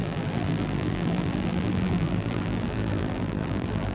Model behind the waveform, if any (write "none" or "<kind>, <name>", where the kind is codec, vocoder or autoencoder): vocoder, BigVGAN v2